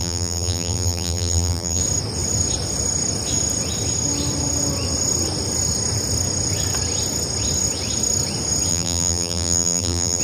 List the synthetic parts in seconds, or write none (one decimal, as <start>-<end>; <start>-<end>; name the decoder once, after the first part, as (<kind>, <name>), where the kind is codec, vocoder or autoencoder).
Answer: 0.0-1.8 (vocoder, BigVGAN v2); 8.7-10.2